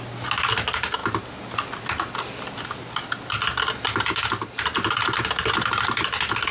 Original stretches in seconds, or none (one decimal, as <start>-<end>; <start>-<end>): 0.0-6.5